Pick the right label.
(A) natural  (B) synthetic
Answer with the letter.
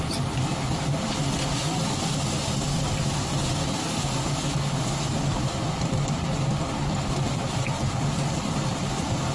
A